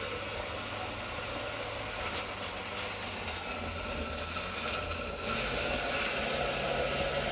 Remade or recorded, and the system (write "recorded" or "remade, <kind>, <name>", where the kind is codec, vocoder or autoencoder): recorded